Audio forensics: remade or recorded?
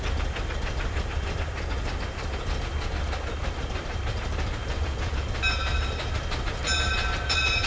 recorded